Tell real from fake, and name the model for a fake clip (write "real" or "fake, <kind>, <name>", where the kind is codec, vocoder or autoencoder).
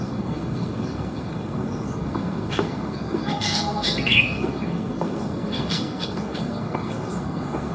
fake, codec, SNAC